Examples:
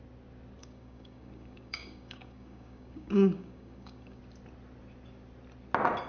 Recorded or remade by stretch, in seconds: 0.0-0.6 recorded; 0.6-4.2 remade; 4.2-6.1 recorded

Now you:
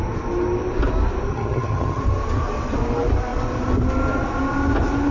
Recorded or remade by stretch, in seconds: 0.0-1.3 recorded; 1.3-2.0 remade; 2.0-5.1 recorded

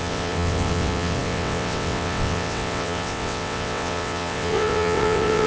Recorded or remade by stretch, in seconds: 0.0-5.5 remade

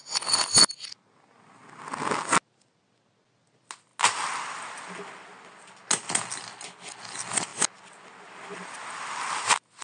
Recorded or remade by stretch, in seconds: 0.0-9.8 recorded

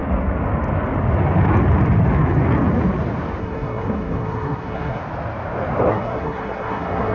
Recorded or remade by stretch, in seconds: 0.0-3.4 recorded; 3.4-5.0 remade; 5.0-5.9 recorded; 5.9-7.1 remade

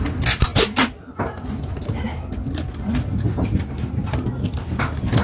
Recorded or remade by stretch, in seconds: 0.0-5.2 recorded

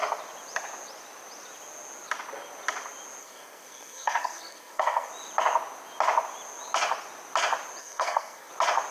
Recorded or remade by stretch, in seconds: 0.0-3.2 recorded; 3.2-5.1 remade; 5.1-7.8 recorded; 7.8-8.5 remade; 8.5-8.9 recorded

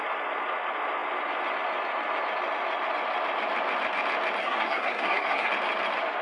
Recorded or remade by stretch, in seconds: 0.0-4.4 recorded; 4.4-5.5 remade; 5.5-6.2 recorded